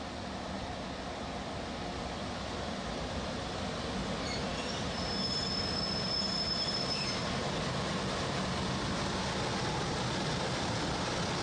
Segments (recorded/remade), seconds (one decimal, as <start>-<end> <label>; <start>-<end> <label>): 0.0-4.5 recorded; 4.5-5.6 remade; 5.6-11.4 recorded